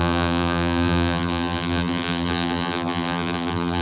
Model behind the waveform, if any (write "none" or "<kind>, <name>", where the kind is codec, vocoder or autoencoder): vocoder, BigVGAN v2